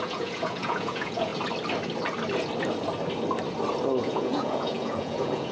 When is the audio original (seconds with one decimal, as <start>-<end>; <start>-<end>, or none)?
1.3-4.0